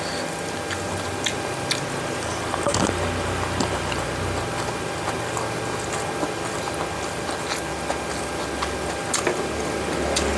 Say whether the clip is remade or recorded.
recorded